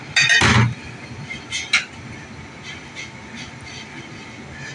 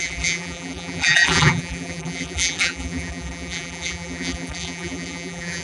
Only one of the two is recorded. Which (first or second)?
first